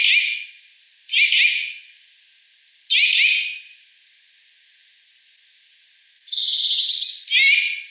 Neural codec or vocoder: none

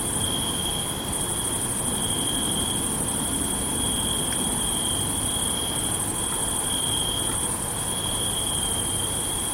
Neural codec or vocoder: none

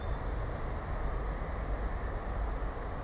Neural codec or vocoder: none